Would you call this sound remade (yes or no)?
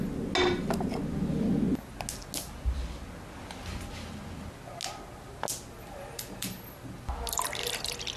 no